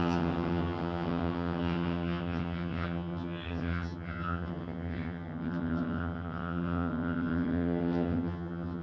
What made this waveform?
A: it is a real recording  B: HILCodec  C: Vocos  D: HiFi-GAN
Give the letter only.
D